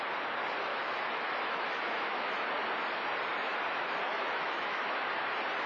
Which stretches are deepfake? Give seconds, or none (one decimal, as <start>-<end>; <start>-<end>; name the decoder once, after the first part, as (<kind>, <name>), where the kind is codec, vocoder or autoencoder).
0.7-2.5 (autoencoder, DAC-VAE); 3.7-5.1